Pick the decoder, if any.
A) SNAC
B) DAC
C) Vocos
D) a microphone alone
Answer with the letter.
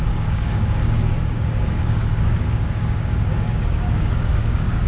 B